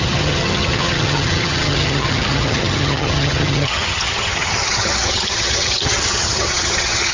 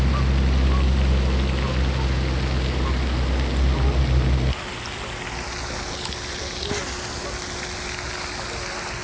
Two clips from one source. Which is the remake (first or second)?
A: first